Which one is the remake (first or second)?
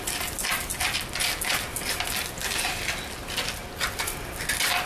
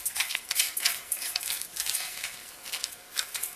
second